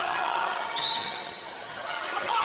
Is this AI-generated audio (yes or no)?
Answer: yes